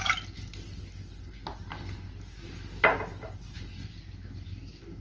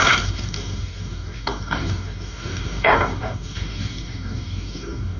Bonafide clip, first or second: first